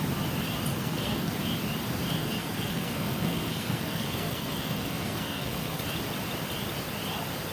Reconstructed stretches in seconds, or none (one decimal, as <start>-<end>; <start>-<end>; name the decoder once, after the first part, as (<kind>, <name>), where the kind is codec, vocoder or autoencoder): 0.7-1.3 (codec, SNAC); 2.2-5.8